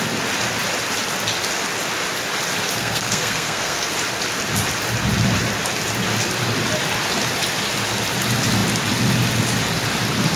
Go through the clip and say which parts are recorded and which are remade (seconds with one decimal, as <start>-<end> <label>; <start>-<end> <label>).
0.0-2.8 recorded; 2.8-3.9 remade; 3.9-10.4 recorded